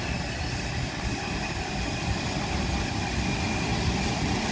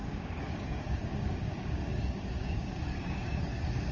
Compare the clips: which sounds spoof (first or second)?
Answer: second